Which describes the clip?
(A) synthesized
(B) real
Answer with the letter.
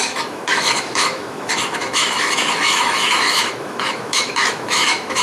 A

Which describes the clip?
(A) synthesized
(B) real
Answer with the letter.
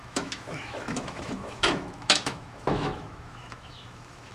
A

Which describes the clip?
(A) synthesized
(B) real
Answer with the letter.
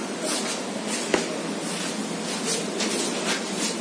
B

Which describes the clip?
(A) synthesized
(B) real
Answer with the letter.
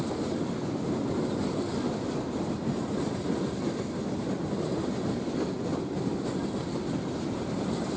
B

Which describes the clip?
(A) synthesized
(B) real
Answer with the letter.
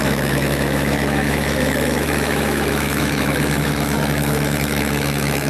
A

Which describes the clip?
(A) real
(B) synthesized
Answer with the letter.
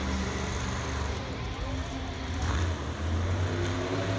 A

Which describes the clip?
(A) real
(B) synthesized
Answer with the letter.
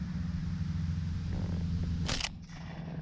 A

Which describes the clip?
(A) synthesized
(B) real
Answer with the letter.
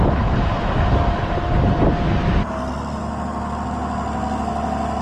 B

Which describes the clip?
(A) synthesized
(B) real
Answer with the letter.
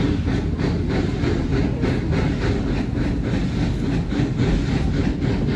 B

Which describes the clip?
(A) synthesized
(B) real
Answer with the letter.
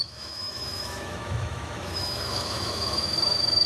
A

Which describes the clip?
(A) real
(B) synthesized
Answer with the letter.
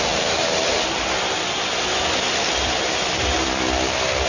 A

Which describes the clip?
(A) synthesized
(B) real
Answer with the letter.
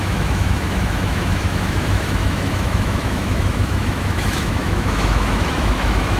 A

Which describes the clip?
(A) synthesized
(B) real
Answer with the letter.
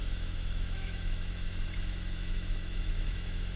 A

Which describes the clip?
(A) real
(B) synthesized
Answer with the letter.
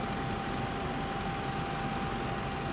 A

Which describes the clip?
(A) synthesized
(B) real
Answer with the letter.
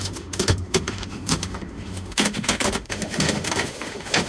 A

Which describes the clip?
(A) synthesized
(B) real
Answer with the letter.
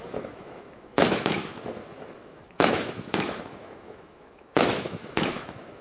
A